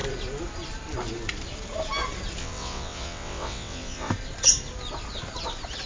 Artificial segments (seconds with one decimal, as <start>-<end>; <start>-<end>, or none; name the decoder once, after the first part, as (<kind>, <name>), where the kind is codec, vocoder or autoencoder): 2.4-4.1 (vocoder, WaveNeXt)